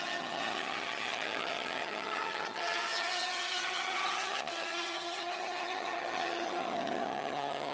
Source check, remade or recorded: remade